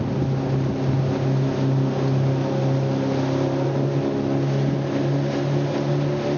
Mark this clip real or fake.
real